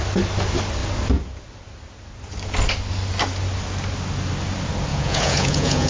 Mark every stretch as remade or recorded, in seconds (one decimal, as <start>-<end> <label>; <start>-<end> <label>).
0.0-4.9 recorded; 4.9-5.9 remade